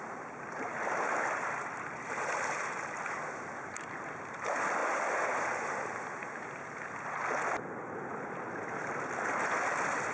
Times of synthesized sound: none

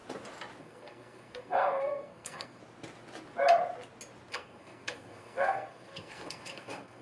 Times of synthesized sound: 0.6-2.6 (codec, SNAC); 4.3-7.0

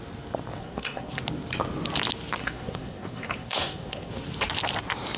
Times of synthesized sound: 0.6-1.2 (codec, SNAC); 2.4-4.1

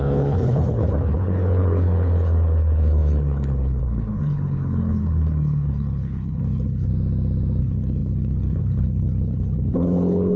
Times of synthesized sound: 0.0-6.9 (codec, HILCodec); 7.6-10.4

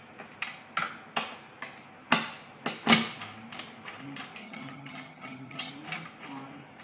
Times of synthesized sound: 4.4-5.7 (vocoder, HiFi-GAN)

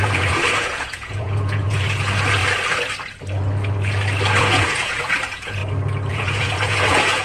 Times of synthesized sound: 0.0-2.4 (vocoder, Vocos); 4.4-5.6; 6.1-7.2

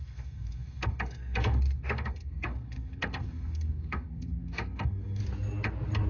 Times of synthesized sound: 0.0-5.2 (codec, SNAC)

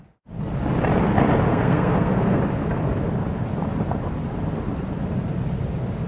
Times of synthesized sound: 1.5-2.4 (codec, SNAC)